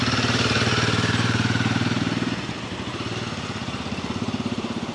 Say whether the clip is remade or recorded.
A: remade